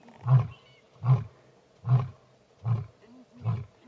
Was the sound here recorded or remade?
recorded